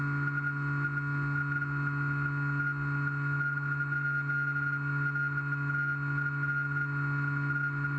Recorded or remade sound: recorded